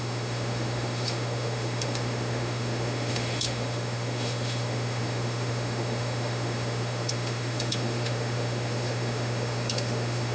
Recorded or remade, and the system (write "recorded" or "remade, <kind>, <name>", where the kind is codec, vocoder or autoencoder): remade, autoencoder, DAC-VAE